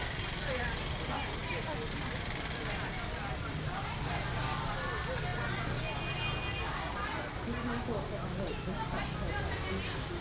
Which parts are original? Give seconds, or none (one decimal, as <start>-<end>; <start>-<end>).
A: 0.0-10.2